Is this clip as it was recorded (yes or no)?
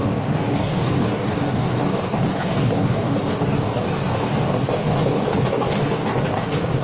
no